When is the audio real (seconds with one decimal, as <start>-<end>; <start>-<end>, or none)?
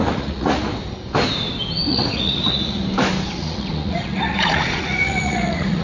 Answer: 0.7-1.9; 2.8-3.3